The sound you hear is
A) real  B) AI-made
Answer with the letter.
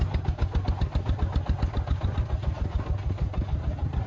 A